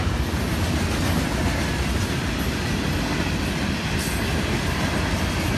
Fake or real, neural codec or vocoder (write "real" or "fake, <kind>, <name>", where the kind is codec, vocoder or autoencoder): real